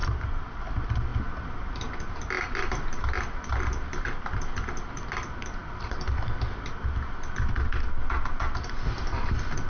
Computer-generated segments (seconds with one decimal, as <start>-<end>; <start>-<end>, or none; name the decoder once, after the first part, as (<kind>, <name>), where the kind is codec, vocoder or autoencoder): 0.0-0.6 (vocoder, BigVGAN v2)